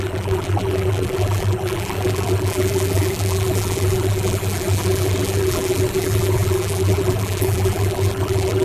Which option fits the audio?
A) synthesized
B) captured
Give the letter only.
A